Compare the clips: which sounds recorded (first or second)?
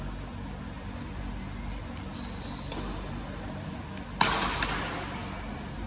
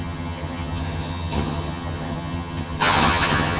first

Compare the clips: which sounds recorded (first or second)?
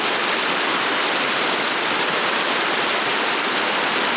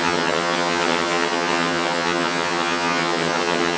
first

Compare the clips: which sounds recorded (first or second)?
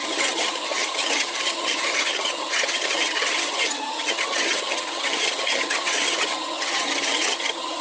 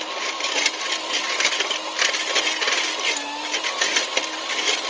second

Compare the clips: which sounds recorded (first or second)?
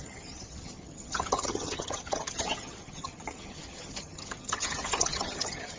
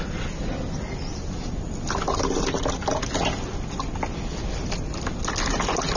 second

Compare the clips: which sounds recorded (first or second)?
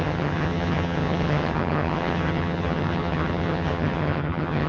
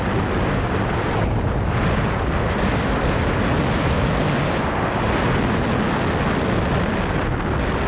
second